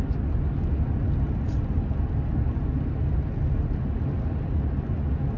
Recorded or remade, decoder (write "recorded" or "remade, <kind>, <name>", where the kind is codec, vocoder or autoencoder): recorded